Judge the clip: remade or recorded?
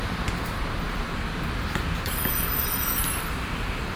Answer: remade